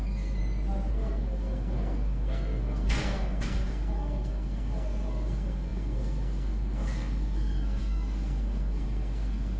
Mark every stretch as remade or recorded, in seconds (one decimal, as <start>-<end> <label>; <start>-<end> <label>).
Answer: 0.0-0.4 remade; 0.4-0.9 recorded; 0.9-9.6 remade